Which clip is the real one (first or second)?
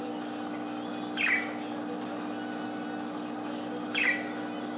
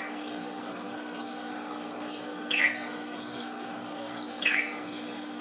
first